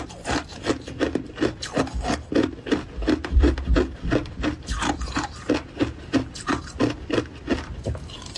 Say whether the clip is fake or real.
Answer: real